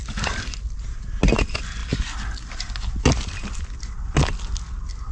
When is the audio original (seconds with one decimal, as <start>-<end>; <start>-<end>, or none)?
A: 0.0-5.1